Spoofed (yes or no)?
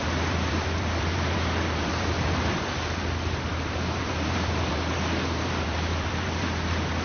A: yes